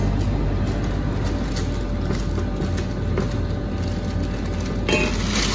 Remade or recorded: recorded